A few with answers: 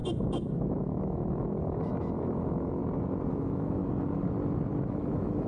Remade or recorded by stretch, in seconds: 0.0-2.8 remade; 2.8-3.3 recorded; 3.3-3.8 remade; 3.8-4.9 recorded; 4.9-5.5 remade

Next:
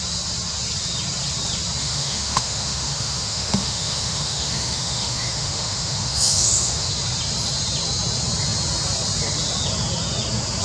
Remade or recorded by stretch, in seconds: 0.0-1.8 recorded; 1.8-6.9 remade; 6.9-10.6 recorded

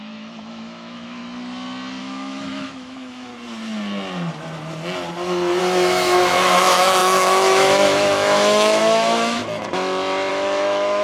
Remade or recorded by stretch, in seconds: 0.0-1.2 remade; 1.2-2.0 recorded; 2.0-3.3 remade; 3.3-5.6 recorded; 5.6-9.4 remade; 9.4-10.3 recorded; 10.3-11.0 remade

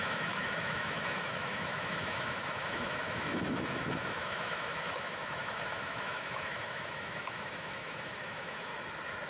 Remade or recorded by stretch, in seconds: 0.0-8.7 remade; 8.7-9.3 recorded

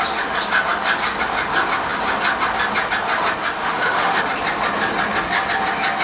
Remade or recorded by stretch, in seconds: 0.0-3.6 recorded; 3.6-4.2 remade; 4.2-6.0 recorded

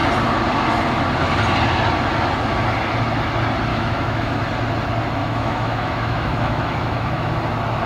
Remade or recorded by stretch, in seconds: 0.0-3.7 recorded; 3.7-4.4 remade; 4.4-5.2 recorded; 5.2-7.3 remade; 7.3-7.9 recorded